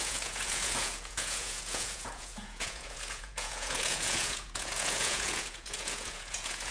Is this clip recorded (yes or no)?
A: no